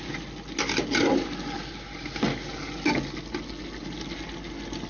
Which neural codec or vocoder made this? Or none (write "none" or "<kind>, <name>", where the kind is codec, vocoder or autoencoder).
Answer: none